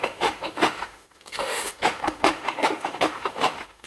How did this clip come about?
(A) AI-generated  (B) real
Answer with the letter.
A